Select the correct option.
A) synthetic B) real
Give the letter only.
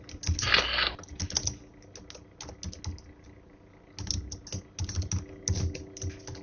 B